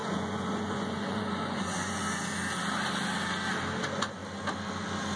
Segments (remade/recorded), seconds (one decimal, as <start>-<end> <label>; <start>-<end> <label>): 0.0-2.0 remade; 2.0-5.2 recorded